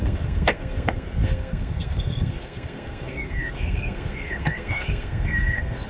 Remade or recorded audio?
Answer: remade